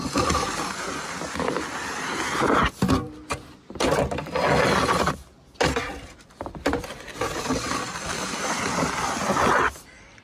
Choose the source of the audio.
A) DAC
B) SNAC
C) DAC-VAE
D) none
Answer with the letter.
D